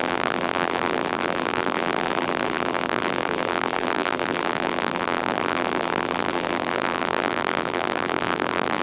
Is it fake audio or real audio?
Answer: fake